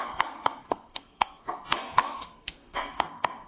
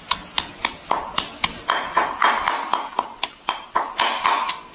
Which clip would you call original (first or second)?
second